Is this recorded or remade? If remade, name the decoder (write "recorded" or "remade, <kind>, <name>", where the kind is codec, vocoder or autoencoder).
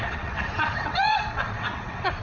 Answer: remade, vocoder, WaveNeXt